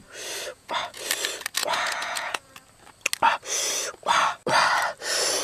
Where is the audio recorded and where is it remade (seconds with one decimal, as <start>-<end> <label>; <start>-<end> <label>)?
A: 0.0-0.5 recorded; 0.5-1.0 remade; 1.0-1.6 recorded; 1.6-2.5 remade; 2.5-5.4 recorded